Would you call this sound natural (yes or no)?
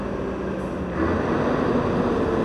yes